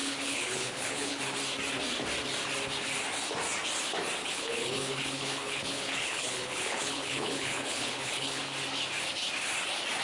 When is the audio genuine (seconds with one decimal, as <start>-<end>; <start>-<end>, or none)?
1.2-4.2; 8.4-10.0